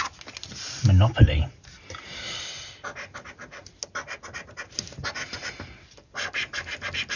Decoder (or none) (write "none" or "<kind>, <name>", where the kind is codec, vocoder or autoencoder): none